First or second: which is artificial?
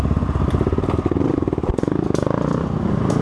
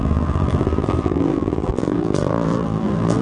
second